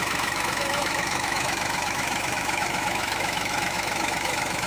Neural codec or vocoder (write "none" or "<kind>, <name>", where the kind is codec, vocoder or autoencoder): autoencoder, DAC-VAE